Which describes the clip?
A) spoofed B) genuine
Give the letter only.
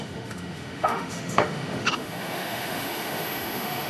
A